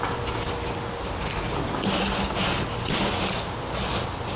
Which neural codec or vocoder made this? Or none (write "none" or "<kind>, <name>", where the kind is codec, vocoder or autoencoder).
none